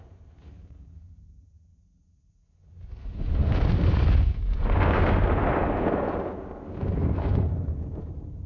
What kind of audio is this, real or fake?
real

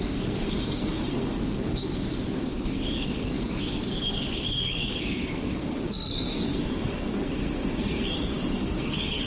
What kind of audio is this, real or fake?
fake